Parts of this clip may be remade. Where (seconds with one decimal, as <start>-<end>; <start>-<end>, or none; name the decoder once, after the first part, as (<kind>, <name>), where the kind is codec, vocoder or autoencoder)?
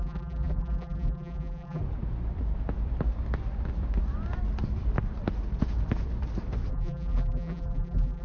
0.0-1.8 (vocoder, BigVGAN v2); 6.7-8.2